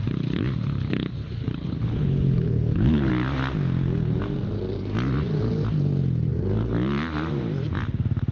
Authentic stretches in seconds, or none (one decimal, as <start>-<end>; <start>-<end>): 0.0-1.2; 3.1-8.3